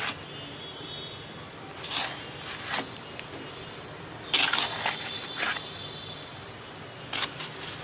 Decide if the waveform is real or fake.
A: real